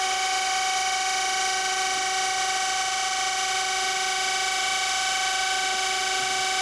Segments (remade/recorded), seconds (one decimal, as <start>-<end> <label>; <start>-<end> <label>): 0.0-6.6 recorded